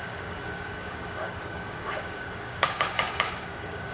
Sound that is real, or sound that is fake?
fake